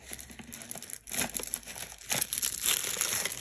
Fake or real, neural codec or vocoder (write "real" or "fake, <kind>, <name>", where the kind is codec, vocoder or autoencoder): real